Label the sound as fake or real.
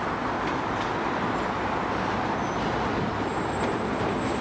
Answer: real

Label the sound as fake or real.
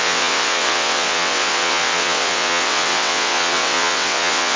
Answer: fake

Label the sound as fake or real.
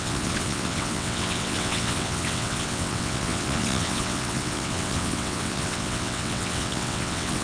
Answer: fake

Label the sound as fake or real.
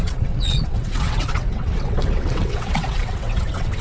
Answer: fake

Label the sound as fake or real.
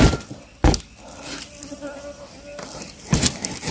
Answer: real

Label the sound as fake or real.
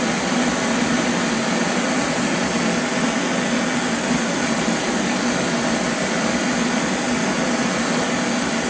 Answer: real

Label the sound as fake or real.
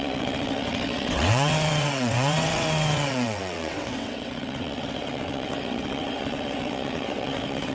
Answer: fake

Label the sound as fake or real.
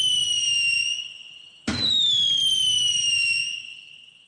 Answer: real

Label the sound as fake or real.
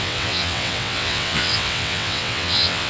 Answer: fake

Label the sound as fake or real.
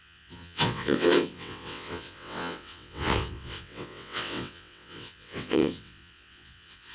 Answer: fake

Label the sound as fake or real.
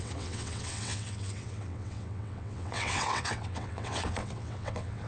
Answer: fake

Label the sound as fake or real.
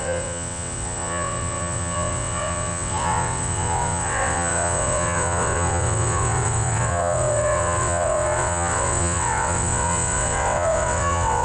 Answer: fake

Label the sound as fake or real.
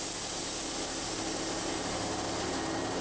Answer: real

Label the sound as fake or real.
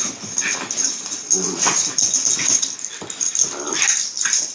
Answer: real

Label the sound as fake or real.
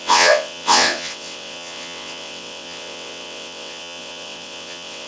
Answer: fake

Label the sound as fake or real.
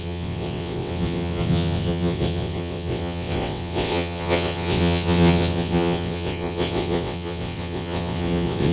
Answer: fake